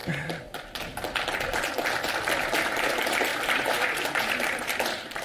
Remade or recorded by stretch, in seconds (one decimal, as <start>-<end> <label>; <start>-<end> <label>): 0.0-2.8 recorded; 2.8-5.2 remade